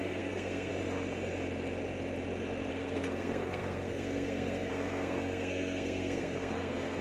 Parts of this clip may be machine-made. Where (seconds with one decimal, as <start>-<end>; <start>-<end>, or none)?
0.0-0.7; 2.7-7.0